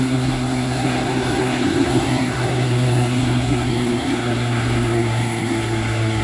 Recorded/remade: remade